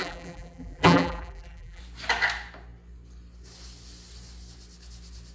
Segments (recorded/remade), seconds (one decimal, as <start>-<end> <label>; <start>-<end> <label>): 0.0-1.8 remade; 1.8-5.3 recorded